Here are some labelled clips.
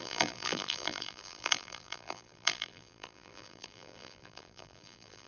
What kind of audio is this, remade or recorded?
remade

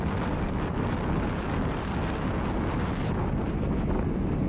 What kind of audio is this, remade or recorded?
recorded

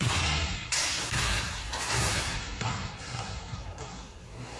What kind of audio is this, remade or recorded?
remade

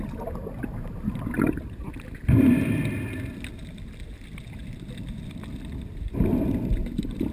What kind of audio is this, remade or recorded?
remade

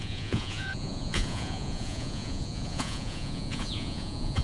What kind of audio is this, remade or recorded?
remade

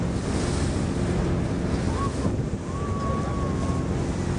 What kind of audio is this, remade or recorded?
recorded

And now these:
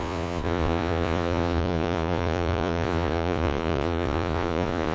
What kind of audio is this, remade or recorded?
remade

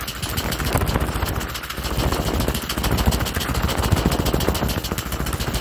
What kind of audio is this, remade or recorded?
recorded